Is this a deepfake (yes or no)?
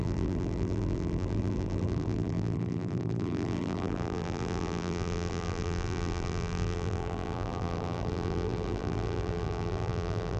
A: yes